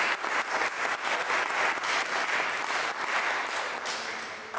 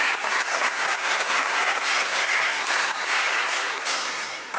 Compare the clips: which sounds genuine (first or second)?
first